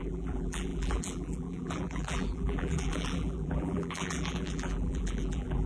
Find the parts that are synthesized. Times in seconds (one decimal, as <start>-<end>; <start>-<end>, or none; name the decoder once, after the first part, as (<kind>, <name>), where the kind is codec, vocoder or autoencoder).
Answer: 0.0-5.7 (vocoder, BigVGAN v2)